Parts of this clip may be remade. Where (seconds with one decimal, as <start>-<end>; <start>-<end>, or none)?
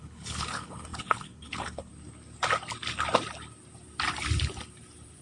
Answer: 0.0-1.9